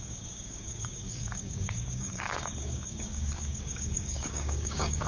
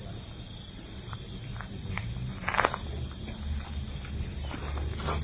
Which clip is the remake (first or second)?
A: first